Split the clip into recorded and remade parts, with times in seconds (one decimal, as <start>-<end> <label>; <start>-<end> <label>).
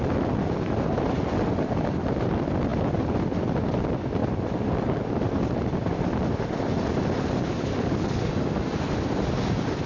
0.0-9.9 recorded